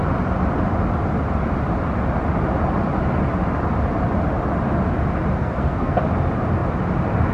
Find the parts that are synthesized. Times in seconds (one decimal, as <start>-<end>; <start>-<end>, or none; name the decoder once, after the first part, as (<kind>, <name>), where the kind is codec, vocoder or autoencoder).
5.4-6.0 (codec, SNAC)